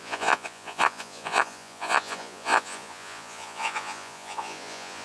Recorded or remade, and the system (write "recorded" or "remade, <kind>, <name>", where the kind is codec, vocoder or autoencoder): remade, vocoder, Vocos